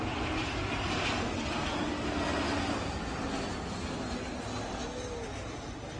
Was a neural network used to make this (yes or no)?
no